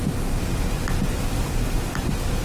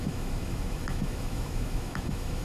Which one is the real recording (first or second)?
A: first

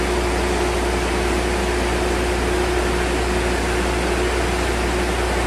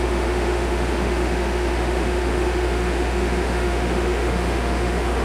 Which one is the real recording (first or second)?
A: first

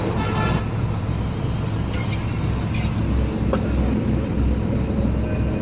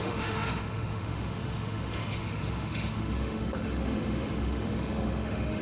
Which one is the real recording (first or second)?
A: first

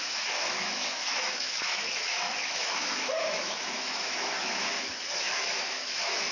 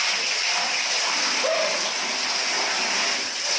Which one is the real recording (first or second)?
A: second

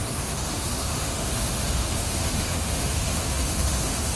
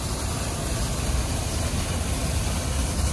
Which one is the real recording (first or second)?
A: second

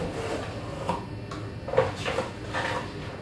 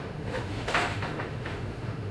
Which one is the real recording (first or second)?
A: first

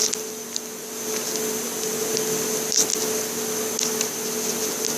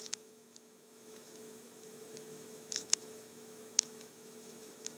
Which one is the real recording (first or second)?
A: first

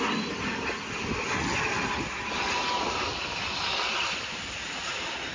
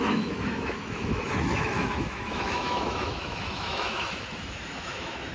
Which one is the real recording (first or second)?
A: first